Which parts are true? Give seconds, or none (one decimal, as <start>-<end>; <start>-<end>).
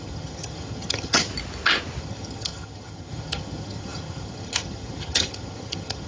1.3-2.0